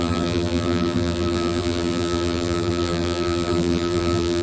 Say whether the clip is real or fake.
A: fake